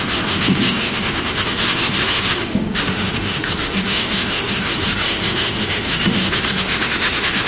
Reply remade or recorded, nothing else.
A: remade